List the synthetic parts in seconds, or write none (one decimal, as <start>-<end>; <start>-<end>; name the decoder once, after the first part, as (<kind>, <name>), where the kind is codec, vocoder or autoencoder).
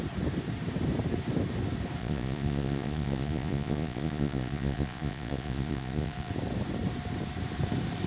2.0-6.3 (vocoder, Vocos)